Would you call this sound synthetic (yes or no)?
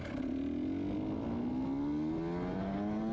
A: no